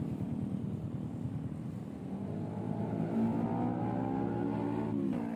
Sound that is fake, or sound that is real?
real